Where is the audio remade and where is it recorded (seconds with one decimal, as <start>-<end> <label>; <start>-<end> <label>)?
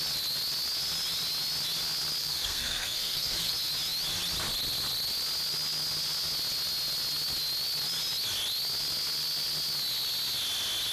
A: 0.0-2.2 recorded; 2.2-3.5 remade; 3.5-10.9 recorded